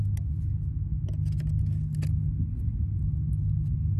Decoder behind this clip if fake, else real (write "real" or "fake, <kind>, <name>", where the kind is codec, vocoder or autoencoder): real